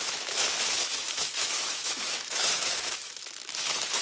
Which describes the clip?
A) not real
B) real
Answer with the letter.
A